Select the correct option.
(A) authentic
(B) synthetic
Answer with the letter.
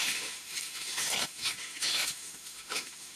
B